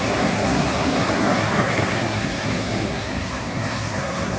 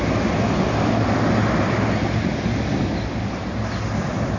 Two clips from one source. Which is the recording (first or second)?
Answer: second